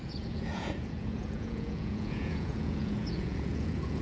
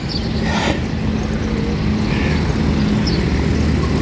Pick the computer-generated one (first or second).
first